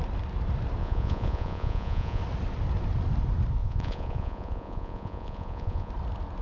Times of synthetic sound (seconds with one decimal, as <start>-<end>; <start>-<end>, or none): 0.8-2.2; 3.6-5.9